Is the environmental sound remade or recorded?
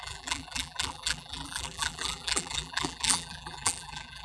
remade